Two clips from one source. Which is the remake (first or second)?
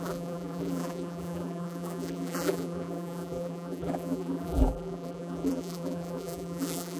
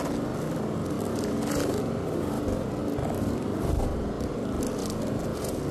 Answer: first